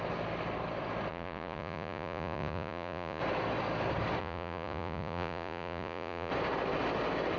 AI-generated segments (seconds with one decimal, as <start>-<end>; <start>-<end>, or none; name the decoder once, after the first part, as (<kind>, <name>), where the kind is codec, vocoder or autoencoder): 1.1-3.2 (vocoder, Vocos); 4.2-6.3